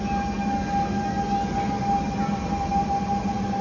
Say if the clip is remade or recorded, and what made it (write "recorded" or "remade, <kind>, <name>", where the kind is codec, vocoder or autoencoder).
recorded